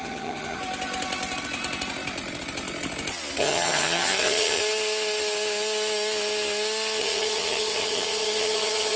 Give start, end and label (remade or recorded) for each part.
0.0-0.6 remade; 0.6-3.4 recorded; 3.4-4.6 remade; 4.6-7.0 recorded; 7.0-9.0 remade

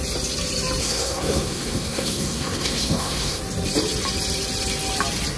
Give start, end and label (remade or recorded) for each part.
0.0-0.8 recorded; 0.8-3.4 remade; 3.4-5.4 recorded

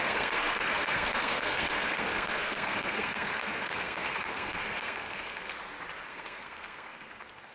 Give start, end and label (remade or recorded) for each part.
0.0-5.5 remade; 5.5-6.1 recorded; 6.1-7.5 remade

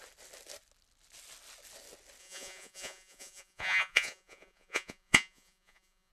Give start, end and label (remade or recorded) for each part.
0.0-2.2 recorded; 2.2-6.1 remade

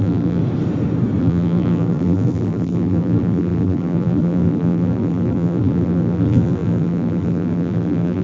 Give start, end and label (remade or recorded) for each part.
0.0-0.4 remade; 0.4-1.2 recorded; 1.2-8.2 remade

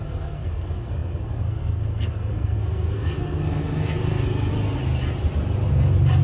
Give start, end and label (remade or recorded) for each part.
0.0-4.5 remade; 4.5-6.2 recorded